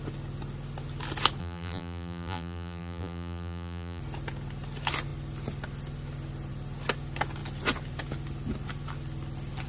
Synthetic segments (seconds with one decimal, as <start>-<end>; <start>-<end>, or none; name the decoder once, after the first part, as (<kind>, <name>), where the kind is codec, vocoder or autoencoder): 1.4-4.0 (vocoder, BigVGAN v2)